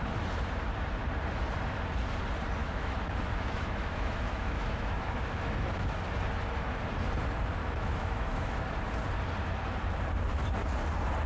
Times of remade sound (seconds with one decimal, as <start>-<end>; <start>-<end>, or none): 2.6-5.9; 7.6-8.6